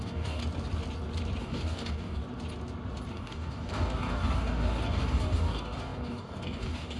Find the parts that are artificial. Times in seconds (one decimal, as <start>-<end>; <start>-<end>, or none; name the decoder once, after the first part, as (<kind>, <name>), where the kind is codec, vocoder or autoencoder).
0.0-0.4 (codec, DAC); 1.4-2.2; 3.1-7.0